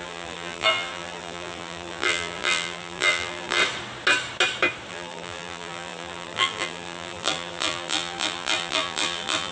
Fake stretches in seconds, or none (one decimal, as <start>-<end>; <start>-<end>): 0.0-3.6; 4.9-9.5